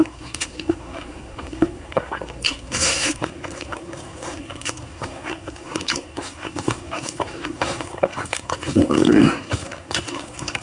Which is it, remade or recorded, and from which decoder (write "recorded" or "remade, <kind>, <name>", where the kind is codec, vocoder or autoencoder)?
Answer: remade, codec, SNAC